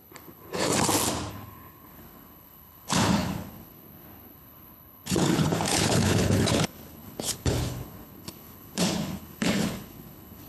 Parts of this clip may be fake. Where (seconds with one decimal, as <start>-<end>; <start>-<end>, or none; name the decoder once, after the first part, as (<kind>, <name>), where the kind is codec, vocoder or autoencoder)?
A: 0.0-0.7 (codec, HILCodec); 1.3-10.5